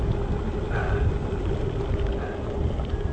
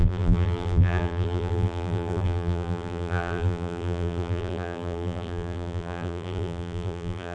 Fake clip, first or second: second